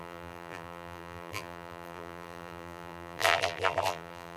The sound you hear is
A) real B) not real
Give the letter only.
B